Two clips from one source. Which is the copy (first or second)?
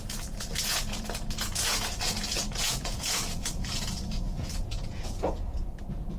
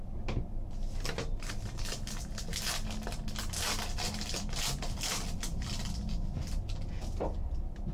first